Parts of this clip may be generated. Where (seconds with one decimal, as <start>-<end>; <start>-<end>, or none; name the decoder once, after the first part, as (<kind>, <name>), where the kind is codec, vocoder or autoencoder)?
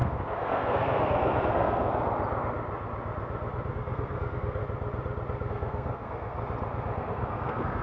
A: 0.0-1.9 (codec, SNAC); 3.7-4.6; 5.5-6.4; 7.0-7.8